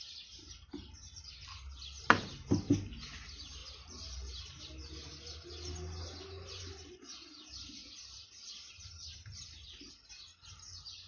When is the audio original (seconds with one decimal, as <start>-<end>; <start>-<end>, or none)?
0.0-11.1